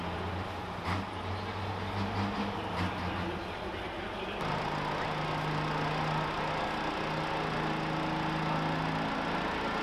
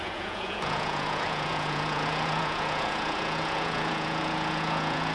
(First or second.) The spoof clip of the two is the second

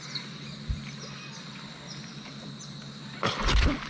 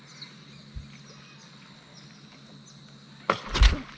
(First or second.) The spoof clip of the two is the first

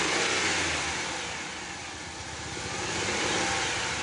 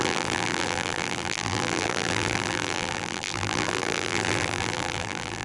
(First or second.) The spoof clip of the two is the second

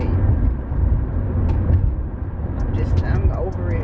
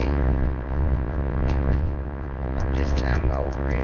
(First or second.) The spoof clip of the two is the second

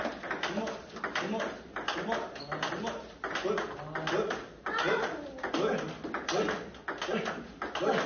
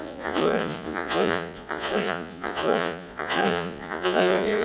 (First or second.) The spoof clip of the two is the second